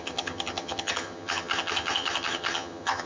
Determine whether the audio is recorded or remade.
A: remade